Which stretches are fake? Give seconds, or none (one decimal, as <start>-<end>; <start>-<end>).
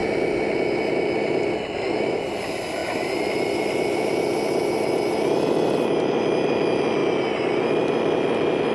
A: none